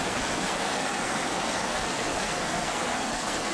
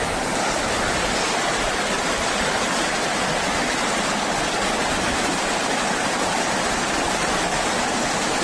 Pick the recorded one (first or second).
second